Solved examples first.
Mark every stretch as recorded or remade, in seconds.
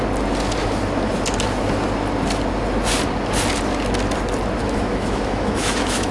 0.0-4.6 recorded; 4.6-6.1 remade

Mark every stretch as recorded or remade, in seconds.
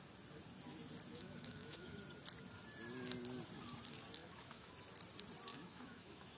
0.0-1.1 recorded; 1.1-2.0 remade; 2.0-4.2 recorded; 4.2-4.7 remade; 4.7-5.5 recorded; 5.5-6.4 remade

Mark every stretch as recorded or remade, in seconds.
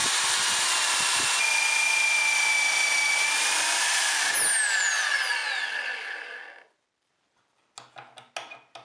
0.0-8.8 recorded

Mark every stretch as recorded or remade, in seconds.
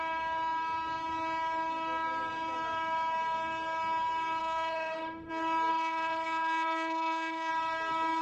0.0-4.4 recorded; 4.4-5.3 remade; 5.3-5.7 recorded; 5.7-7.5 remade; 7.5-8.2 recorded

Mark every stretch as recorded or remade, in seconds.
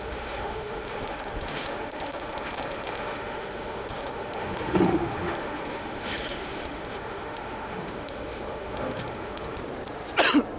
0.0-9.6 remade; 9.6-10.6 recorded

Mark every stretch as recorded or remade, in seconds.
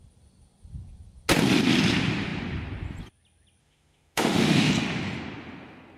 0.0-3.6 recorded; 3.6-4.7 remade; 4.7-6.0 recorded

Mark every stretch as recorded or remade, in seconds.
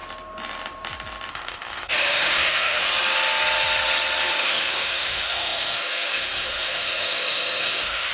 0.0-1.3 recorded; 1.3-2.9 remade; 2.9-4.3 recorded; 4.3-8.1 remade